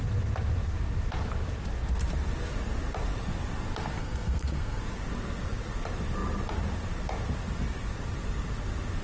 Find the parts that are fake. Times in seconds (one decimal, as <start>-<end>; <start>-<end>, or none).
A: 4.0-4.8